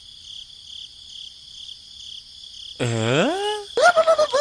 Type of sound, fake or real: real